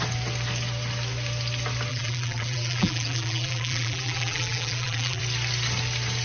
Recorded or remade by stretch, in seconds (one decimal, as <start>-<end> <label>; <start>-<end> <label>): 0.0-1.9 recorded; 1.9-5.2 remade; 5.2-6.2 recorded